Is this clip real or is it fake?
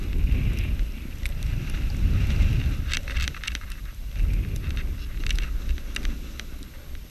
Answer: real